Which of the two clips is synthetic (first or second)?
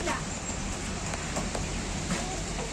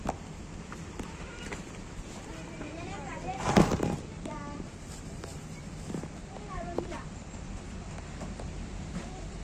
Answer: second